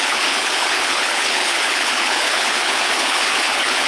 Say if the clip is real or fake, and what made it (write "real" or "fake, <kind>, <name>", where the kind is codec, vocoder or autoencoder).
fake, codec, HILCodec